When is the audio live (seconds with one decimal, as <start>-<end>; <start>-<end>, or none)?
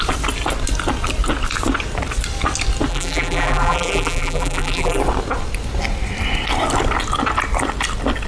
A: 0.0-2.9; 5.0-8.3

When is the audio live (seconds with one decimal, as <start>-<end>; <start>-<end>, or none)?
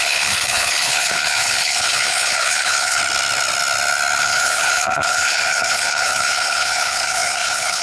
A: 3.0-4.2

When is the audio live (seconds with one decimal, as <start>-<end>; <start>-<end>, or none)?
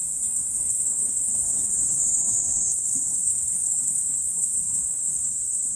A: none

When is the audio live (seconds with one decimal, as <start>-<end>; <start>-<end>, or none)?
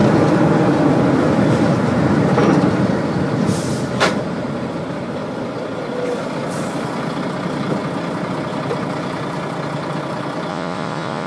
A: 0.0-10.5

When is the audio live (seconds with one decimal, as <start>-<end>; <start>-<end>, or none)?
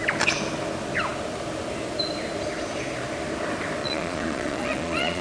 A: 0.0-3.8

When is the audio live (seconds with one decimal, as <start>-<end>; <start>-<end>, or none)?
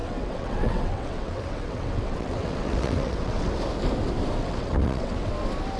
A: 3.5-4.4; 5.3-5.8